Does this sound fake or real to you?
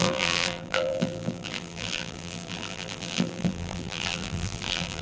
fake